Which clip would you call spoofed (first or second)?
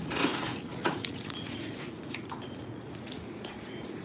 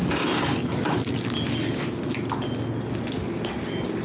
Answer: first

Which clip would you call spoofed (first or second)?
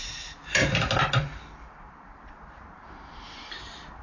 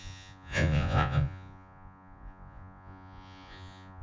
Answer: second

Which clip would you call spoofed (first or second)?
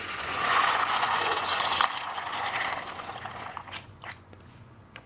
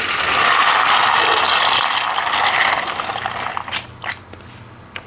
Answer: first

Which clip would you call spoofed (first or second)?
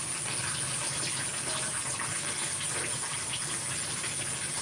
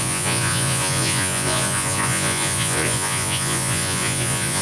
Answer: second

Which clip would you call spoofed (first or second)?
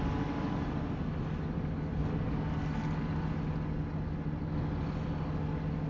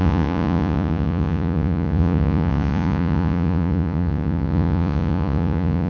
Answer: second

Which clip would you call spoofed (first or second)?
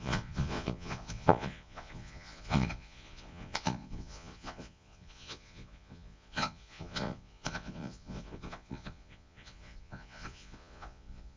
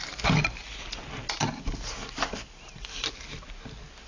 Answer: first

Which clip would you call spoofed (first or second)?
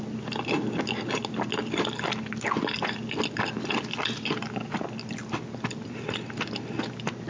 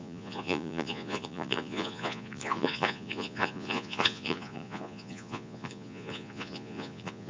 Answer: second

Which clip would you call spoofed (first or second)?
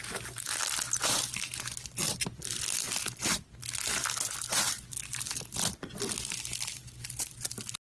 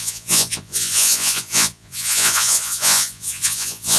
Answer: second